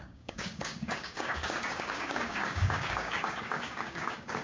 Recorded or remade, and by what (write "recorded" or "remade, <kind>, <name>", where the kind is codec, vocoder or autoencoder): remade, codec, DAC